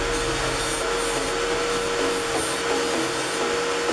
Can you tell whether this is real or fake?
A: real